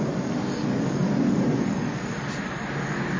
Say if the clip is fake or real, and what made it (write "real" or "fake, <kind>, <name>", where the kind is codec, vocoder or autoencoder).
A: real